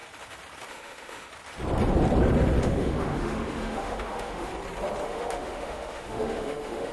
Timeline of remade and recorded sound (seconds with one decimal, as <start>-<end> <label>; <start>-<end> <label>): 0.0-0.7 recorded; 0.7-1.3 remade; 1.3-2.6 recorded; 2.6-4.5 remade; 4.5-5.0 recorded; 5.0-6.9 remade